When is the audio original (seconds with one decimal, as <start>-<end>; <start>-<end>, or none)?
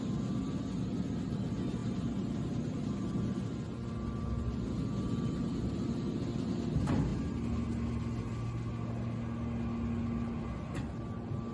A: 0.0-11.5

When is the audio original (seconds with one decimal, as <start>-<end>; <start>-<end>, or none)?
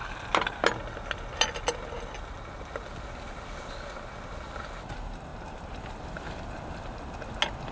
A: 0.0-7.7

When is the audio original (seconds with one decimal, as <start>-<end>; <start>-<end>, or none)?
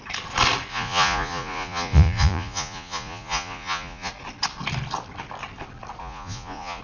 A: 0.0-0.7; 4.1-6.0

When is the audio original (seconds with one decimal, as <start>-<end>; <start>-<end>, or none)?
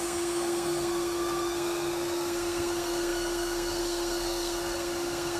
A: none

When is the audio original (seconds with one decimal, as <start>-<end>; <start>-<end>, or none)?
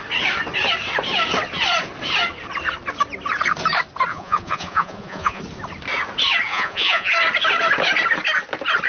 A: 0.0-4.1; 5.4-6.5; 7.1-8.9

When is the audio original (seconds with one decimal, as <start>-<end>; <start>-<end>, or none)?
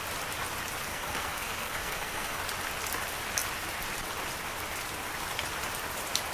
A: 0.0-0.9; 2.4-6.3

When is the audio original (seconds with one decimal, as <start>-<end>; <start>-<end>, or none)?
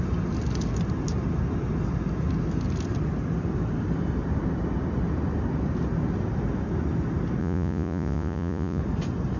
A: 0.0-7.4; 8.8-9.4